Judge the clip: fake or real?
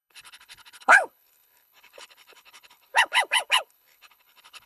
fake